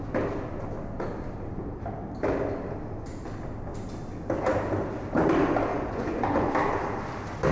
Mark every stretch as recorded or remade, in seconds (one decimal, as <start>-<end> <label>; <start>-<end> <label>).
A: 0.0-5.7 recorded; 5.7-6.5 remade; 6.5-7.5 recorded